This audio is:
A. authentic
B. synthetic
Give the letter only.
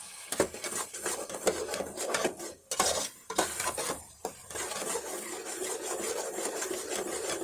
A